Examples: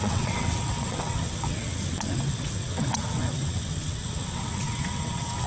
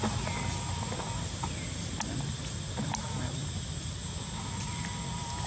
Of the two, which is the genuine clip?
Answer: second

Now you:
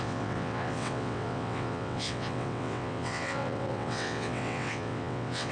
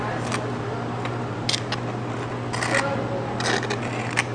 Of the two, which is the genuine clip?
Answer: second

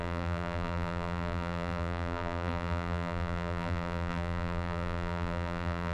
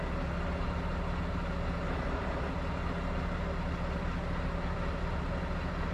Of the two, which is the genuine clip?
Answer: second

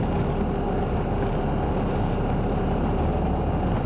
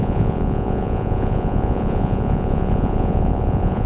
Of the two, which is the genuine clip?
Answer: first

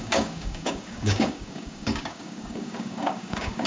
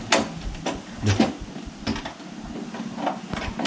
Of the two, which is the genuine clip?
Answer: second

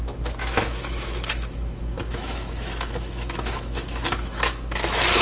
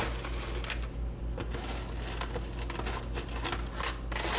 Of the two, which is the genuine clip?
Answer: second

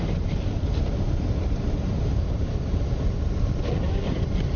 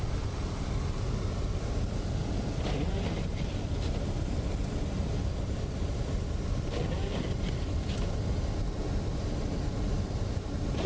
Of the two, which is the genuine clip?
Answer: second